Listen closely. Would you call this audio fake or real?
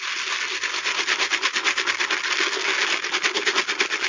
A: real